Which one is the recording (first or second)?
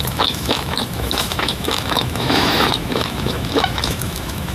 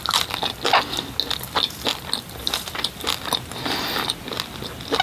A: second